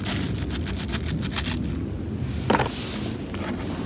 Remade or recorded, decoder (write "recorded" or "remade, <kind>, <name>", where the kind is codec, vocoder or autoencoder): recorded